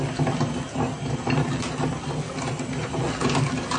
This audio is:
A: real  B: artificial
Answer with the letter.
A